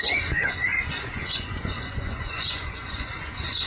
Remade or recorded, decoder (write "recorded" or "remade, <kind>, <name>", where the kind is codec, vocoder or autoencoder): remade, vocoder, Vocos